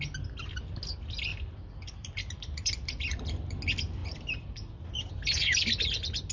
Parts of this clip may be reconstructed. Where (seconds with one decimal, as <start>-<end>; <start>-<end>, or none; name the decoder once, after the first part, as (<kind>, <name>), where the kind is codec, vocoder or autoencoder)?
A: 1.3-3.6 (vocoder, BigVGAN v2); 4.0-5.1